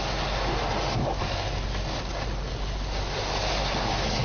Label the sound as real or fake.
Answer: real